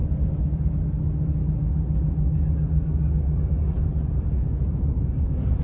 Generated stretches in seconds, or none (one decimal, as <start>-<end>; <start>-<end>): 3.8-5.6